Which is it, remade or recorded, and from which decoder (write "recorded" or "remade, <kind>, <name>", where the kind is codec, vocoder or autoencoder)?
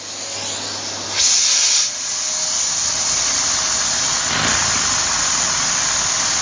recorded